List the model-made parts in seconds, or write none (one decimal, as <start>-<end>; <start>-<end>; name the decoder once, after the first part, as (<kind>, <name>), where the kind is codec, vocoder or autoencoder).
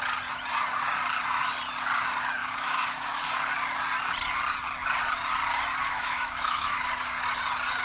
2.4-3.2 (autoencoder, DAC-VAE); 5.8-6.8